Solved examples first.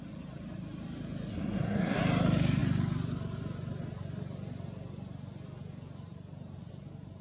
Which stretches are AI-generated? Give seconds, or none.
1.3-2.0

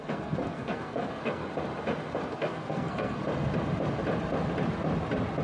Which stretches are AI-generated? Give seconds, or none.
0.0-1.4; 2.3-3.2

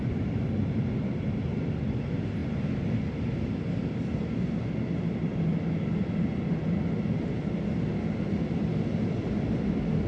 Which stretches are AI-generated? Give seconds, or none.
none

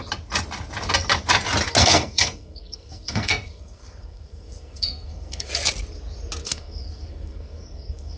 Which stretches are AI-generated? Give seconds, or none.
1.8-5.5; 6.4-8.2

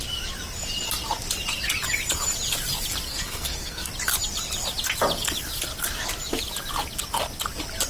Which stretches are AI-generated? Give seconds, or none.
3.1-3.9

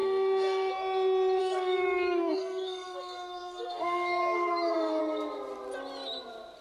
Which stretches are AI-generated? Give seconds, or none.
0.0-0.7; 1.4-5.0

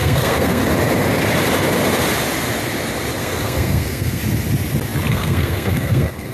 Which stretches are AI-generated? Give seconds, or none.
0.0-0.6; 3.2-4.2; 5.1-6.3